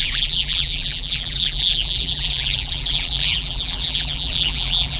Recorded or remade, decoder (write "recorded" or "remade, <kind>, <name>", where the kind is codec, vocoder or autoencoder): remade, vocoder, BigVGAN v2